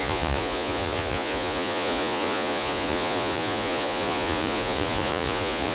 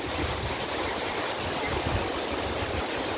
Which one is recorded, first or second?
second